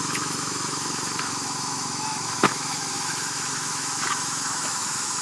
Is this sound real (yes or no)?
no